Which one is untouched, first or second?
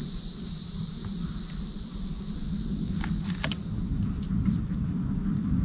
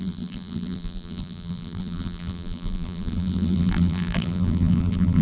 first